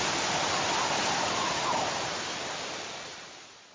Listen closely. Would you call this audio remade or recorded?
remade